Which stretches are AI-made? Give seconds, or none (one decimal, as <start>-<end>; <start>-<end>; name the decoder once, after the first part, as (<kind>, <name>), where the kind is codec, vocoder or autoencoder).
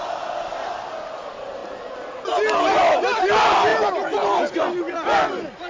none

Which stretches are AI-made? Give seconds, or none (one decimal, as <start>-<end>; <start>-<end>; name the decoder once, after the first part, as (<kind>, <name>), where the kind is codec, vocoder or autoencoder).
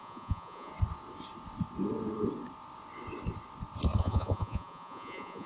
0.0-0.7 (vocoder, Vocos); 4.0-5.5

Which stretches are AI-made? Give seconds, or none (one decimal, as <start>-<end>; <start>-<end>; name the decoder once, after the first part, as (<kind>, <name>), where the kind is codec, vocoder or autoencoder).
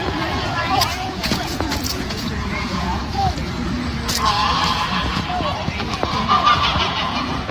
0.0-3.0 (vocoder, Vocos); 6.1-7.5